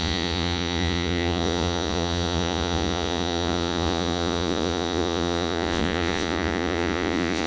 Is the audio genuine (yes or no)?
no